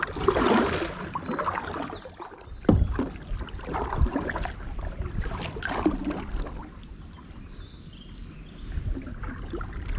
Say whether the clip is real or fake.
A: real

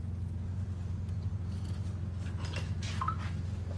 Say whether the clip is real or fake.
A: real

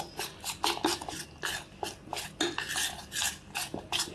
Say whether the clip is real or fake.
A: real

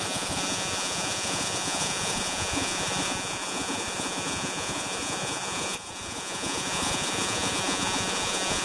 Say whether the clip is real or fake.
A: fake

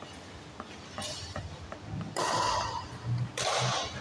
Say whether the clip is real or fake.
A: real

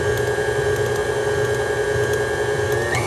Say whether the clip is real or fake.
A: real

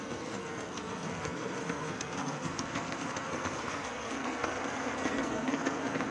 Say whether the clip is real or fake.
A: fake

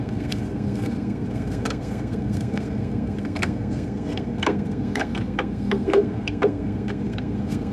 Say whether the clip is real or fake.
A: fake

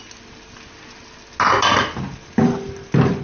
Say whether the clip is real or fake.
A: real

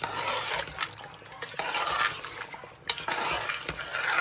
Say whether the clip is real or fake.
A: real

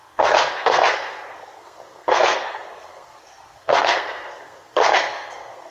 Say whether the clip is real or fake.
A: fake